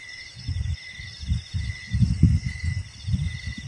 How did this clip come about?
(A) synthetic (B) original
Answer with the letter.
B